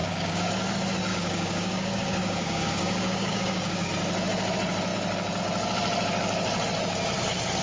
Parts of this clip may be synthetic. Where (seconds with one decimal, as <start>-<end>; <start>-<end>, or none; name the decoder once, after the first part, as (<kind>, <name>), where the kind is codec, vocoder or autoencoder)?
0.0-0.5 (codec, DAC); 1.1-3.9